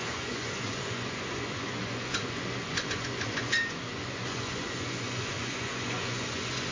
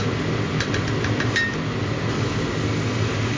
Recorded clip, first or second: second